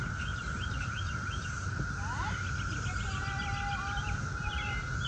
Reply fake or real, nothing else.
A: real